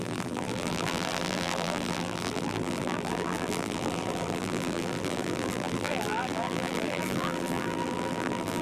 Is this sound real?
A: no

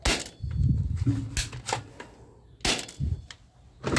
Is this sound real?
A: yes